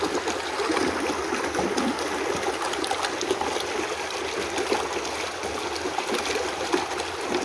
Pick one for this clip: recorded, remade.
recorded